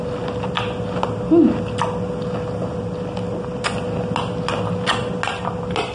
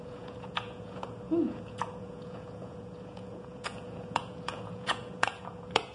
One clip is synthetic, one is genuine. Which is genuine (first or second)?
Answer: first